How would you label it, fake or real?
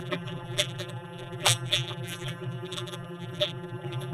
fake